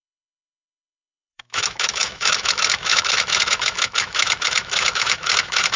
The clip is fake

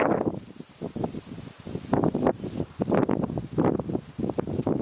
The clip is fake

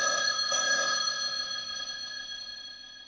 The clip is fake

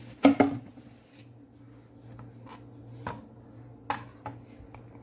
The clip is real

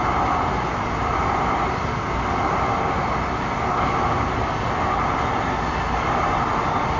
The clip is real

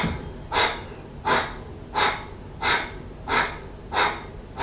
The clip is real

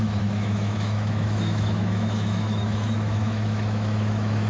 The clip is fake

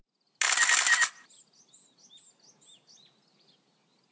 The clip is real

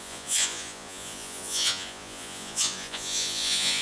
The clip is fake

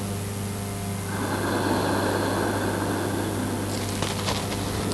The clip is real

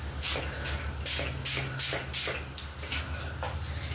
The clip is real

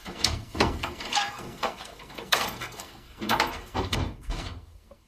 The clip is fake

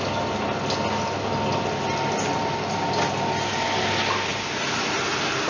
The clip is real